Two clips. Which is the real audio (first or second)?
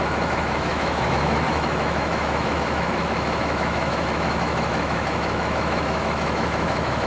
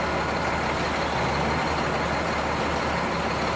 second